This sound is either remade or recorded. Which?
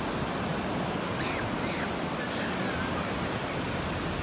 recorded